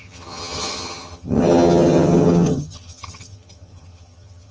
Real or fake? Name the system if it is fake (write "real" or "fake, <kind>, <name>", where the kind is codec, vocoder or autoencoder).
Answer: fake, vocoder, HiFi-GAN